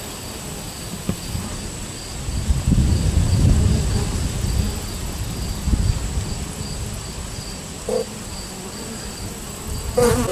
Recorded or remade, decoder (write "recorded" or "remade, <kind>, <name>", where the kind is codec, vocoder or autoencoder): recorded